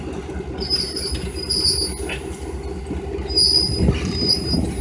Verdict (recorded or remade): recorded